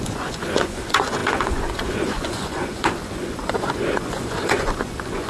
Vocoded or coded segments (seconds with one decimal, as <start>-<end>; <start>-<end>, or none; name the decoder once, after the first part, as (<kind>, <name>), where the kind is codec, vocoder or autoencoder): 0.0-5.3 (vocoder, Vocos)